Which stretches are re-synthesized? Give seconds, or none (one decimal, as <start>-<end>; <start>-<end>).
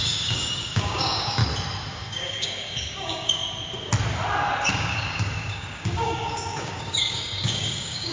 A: 0.0-1.4; 1.9-3.4; 4.7-8.1